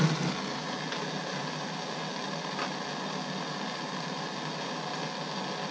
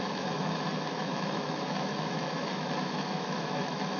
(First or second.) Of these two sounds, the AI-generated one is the second